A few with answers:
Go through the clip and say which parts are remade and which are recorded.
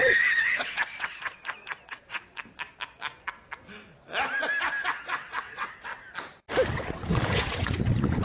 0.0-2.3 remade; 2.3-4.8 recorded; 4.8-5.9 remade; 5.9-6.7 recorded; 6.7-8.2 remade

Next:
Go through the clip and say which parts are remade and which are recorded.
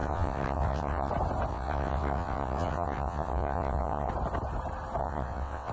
0.0-1.1 remade; 1.1-1.5 recorded; 1.5-4.1 remade; 4.1-5.0 recorded; 5.0-5.7 remade